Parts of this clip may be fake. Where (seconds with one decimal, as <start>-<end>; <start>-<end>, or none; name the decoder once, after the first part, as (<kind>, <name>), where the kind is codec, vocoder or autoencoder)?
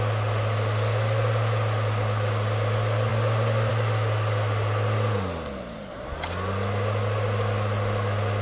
none